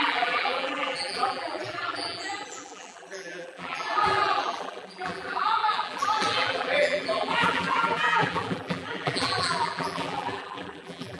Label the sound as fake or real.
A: fake